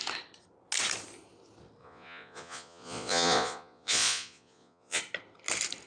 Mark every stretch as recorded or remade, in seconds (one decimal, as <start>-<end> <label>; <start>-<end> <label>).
0.0-1.8 recorded; 1.8-5.0 remade; 5.0-5.9 recorded